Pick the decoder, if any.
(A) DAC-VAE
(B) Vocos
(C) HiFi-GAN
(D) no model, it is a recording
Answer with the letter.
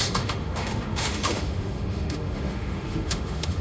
A